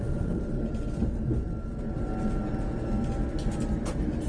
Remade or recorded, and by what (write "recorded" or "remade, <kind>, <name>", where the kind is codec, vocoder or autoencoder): recorded